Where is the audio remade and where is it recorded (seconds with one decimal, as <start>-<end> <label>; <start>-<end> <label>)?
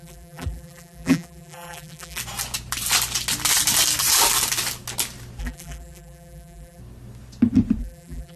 0.0-2.2 remade; 2.2-5.4 recorded; 5.4-6.8 remade; 6.8-7.8 recorded; 7.8-8.4 remade